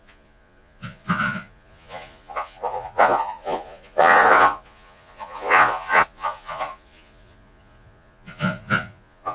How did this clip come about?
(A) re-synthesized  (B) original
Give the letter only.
A